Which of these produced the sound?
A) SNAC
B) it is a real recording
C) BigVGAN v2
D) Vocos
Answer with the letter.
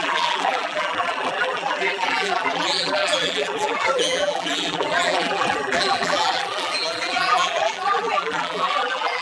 C